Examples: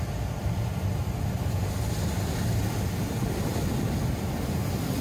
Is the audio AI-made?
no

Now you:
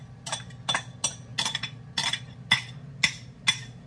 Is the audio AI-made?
no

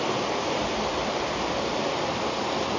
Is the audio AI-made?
no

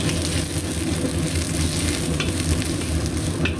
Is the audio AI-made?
no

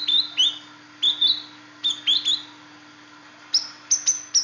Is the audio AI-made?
no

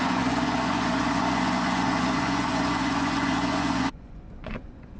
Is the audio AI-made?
yes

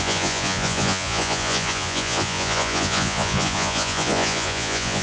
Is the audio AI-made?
yes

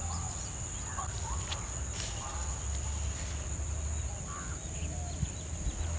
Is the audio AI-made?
no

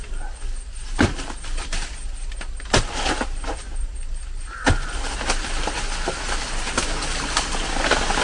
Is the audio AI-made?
no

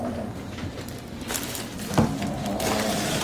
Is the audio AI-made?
no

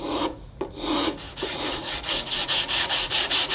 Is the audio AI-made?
yes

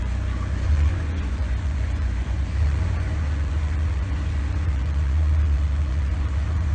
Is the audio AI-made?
yes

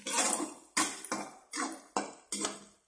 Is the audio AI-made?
no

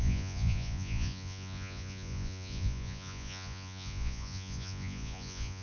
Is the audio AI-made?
yes